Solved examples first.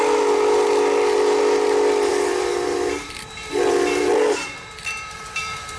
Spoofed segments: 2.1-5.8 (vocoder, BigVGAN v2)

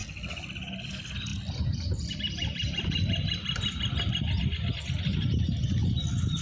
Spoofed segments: 0.9-6.4 (vocoder, BigVGAN v2)

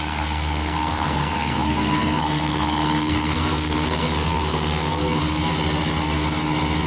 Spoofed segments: 0.0-5.2 (codec, SNAC)

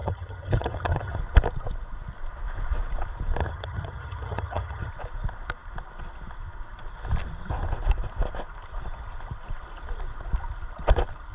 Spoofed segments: 0.0-1.2 (vocoder, HiFi-GAN); 3.4-4.9

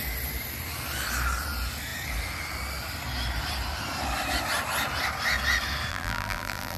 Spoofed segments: 5.9-6.8 (vocoder, BigVGAN v2)